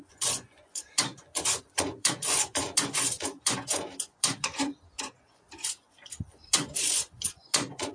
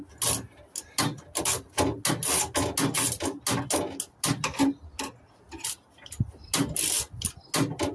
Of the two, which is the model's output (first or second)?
first